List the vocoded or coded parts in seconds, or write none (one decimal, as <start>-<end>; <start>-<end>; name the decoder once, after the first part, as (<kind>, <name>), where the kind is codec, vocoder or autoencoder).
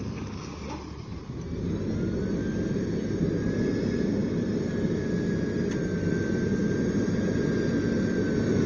none